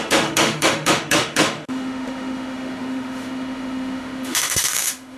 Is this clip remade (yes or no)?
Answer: yes